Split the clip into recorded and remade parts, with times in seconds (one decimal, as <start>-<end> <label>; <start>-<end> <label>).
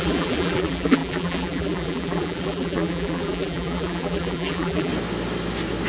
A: 0.0-4.9 remade; 4.9-5.9 recorded